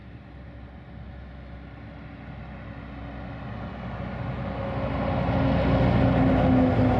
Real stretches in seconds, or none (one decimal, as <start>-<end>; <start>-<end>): 0.0-7.0